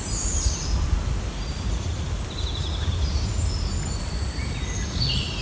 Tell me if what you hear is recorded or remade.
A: recorded